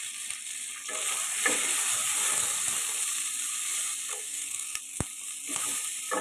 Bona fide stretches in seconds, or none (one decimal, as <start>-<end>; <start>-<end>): 0.0-4.1; 4.8-6.2